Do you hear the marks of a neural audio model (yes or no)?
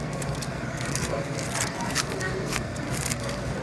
yes